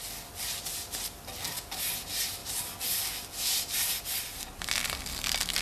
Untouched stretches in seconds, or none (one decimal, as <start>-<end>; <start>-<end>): 0.0-5.6